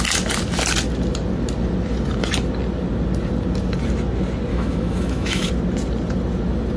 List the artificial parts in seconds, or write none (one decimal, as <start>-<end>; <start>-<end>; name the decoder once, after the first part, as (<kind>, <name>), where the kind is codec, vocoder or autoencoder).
4.5-5.5 (autoencoder, DAC-VAE)